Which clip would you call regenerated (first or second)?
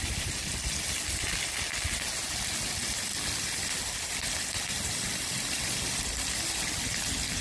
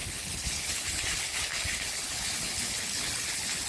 second